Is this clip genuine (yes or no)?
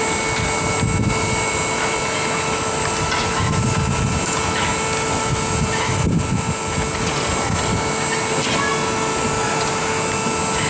yes